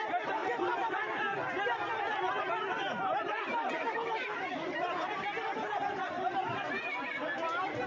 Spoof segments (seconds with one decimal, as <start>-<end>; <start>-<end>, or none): 0.4-1.1; 3.5-6.7

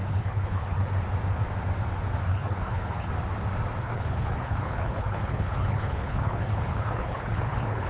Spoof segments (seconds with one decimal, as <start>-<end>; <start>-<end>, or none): 0.0-0.9; 2.3-3.1; 3.8-7.9

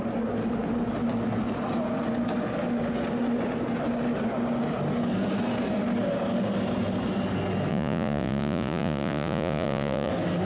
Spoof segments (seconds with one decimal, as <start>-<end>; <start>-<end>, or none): 7.7-10.1

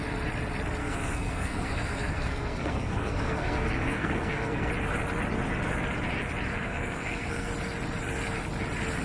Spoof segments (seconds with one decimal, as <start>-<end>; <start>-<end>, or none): 0.8-4.7; 6.5-7.5

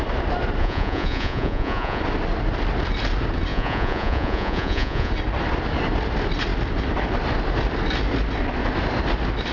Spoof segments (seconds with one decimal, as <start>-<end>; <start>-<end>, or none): 0.6-2.0; 3.5-5.1

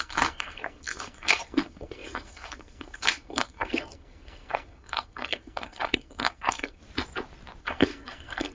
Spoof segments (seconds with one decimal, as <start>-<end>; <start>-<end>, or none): 0.0-6.8; 7.6-8.5